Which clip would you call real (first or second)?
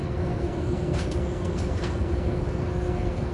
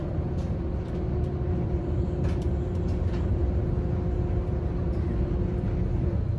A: second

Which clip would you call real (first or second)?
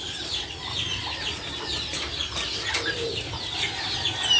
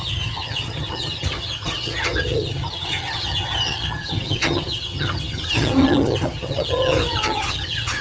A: first